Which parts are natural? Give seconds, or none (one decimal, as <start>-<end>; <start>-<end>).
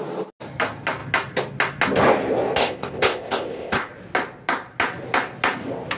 0.0-2.6; 3.9-6.0